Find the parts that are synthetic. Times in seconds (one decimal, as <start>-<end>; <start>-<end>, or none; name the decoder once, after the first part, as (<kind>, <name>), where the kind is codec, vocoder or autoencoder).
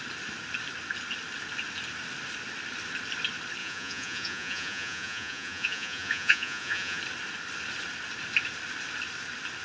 3.6-7.0 (vocoder, Vocos)